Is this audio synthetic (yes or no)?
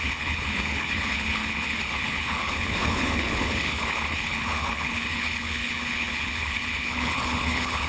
yes